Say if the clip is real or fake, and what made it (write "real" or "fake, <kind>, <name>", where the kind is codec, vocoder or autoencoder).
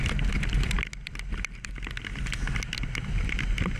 real